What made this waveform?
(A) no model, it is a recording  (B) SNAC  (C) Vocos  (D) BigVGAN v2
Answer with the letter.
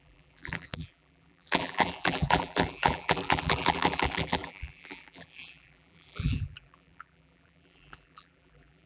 D